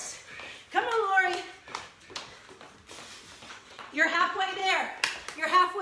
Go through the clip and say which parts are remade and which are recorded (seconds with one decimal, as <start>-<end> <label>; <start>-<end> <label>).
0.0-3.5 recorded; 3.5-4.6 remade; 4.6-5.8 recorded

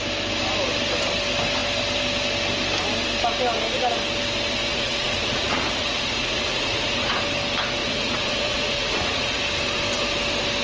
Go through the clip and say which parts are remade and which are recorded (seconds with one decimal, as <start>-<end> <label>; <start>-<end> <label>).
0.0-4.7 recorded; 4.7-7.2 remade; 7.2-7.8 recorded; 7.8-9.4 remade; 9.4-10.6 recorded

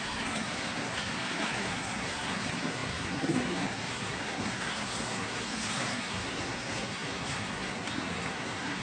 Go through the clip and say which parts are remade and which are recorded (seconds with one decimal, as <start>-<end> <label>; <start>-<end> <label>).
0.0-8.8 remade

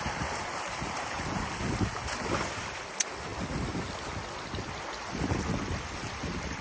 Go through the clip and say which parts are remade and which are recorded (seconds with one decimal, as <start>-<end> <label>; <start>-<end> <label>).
0.0-6.6 recorded